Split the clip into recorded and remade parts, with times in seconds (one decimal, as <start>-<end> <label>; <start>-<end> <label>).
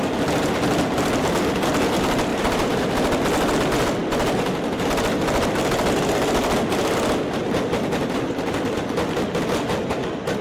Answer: 0.0-2.3 recorded; 2.3-2.9 remade; 2.9-10.4 recorded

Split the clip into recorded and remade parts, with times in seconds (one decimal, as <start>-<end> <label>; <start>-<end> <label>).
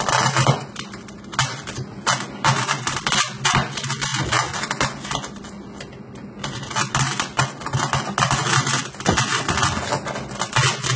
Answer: 0.0-11.0 recorded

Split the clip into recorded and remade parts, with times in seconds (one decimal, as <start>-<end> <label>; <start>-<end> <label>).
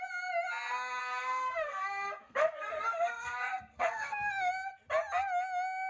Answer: 0.0-1.0 recorded; 1.0-4.5 remade; 4.5-5.9 recorded